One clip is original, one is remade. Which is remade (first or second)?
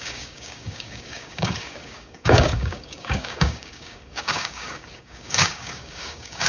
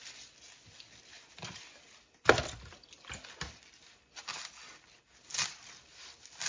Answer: first